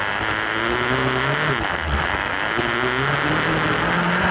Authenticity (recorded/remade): recorded